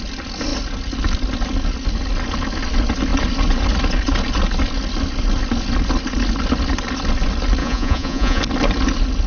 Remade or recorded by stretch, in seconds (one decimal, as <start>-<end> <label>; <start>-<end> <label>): 0.0-7.6 recorded; 7.6-8.4 remade; 8.4-9.3 recorded